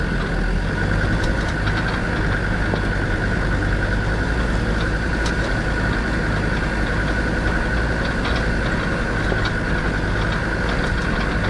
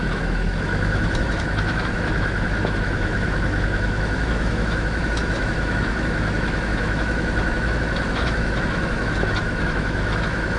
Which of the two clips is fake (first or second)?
second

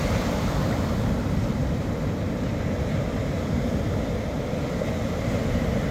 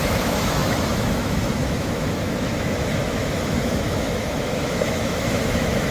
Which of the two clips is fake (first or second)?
second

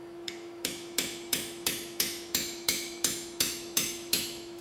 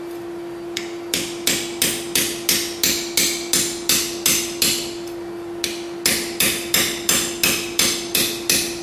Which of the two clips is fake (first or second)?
first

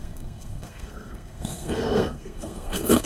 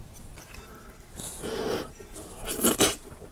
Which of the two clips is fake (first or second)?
first